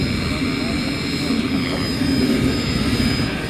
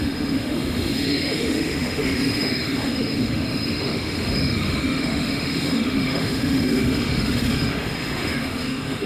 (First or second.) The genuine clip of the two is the first